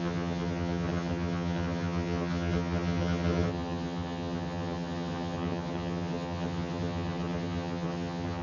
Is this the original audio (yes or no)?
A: no